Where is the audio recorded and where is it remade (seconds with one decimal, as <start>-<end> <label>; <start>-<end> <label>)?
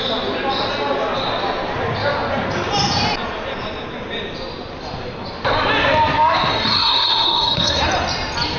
0.0-6.5 recorded; 6.5-7.8 remade; 7.8-8.6 recorded